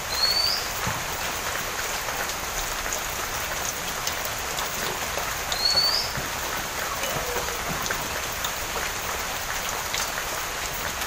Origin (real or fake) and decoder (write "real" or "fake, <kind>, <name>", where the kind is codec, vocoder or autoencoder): fake, vocoder, BigVGAN v2